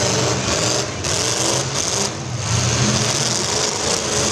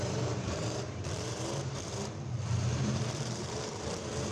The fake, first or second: second